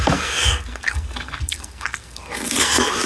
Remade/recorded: remade